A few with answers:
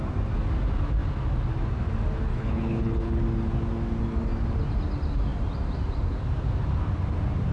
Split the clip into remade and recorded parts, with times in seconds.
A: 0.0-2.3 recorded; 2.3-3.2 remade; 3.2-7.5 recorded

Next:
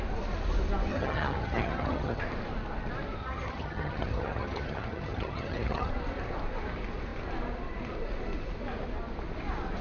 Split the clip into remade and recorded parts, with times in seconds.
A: 0.0-0.9 recorded; 0.9-2.2 remade; 2.2-3.2 recorded; 3.2-5.9 remade; 5.9-9.8 recorded

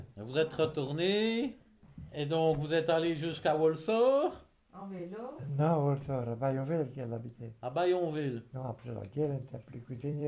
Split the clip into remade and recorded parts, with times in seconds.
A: 0.0-4.8 recorded; 4.8-5.6 remade; 5.6-9.5 recorded; 9.5-10.3 remade